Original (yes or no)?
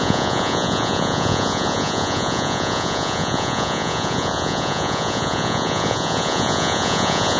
no